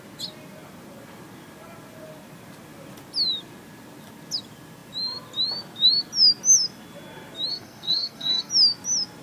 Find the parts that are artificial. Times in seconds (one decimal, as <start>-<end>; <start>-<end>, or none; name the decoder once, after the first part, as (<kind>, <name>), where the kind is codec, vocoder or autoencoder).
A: 7.5-8.5 (codec, SNAC)